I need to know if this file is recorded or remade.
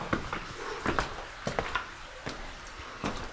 recorded